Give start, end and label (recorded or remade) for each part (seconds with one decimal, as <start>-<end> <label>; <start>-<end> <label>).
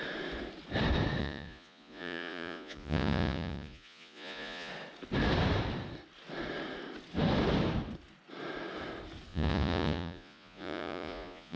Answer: 0.0-1.2 recorded; 1.2-4.7 remade; 4.7-9.3 recorded; 9.3-11.6 remade